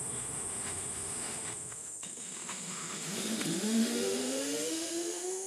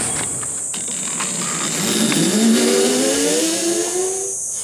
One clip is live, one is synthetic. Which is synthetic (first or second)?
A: first